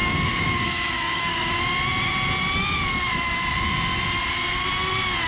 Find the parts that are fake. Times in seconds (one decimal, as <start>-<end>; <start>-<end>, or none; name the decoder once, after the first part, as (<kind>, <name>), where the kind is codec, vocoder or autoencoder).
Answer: 0.0-1.6 (codec, DAC)